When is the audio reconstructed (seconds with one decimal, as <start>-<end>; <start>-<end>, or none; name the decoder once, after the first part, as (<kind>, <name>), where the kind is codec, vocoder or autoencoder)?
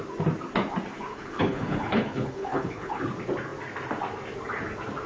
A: 1.1-3.0 (codec, HILCodec)